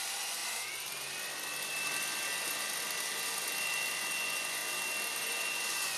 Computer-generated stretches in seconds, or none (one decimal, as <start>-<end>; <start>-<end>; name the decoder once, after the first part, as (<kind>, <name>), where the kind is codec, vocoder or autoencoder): 0.0-0.4 (vocoder, Vocos); 4.0-4.6; 5.2-6.0